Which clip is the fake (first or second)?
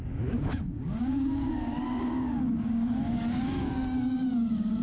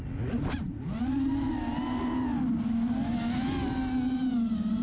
first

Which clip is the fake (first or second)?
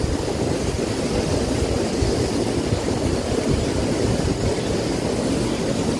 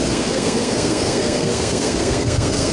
second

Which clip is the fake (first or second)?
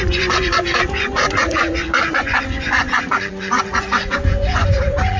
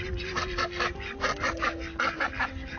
first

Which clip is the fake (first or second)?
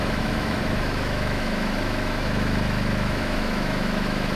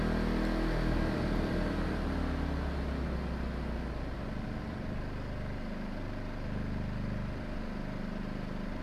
first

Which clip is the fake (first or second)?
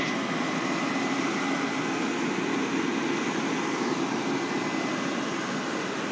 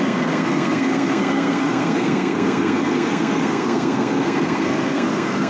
second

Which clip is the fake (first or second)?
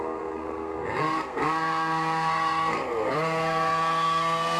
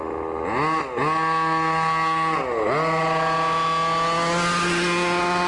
first